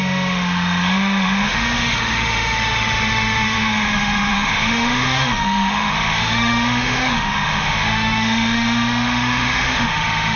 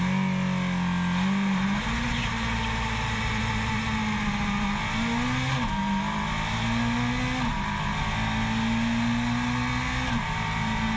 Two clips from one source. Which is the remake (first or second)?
first